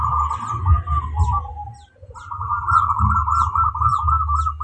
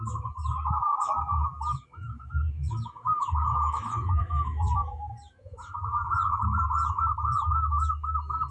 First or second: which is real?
first